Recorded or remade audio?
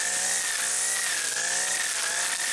recorded